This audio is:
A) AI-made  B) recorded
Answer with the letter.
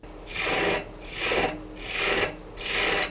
B